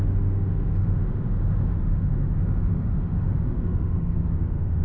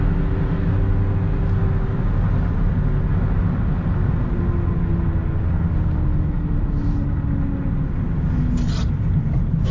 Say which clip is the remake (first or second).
first